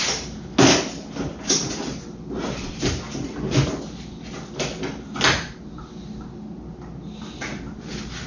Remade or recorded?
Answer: recorded